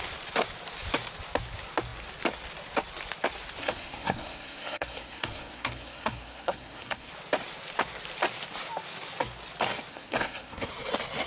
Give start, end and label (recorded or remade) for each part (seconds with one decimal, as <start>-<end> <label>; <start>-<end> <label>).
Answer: 0.0-3.6 recorded; 3.6-7.1 remade; 7.1-9.9 recorded; 9.9-10.7 remade; 10.7-11.3 recorded